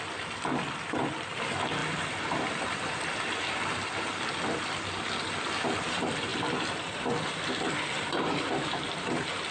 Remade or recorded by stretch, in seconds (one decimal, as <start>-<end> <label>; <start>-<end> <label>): 0.0-1.8 recorded; 1.8-5.5 remade; 5.5-6.3 recorded; 6.3-9.5 remade